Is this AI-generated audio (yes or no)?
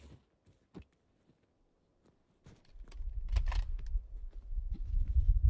no